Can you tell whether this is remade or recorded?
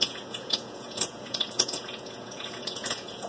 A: remade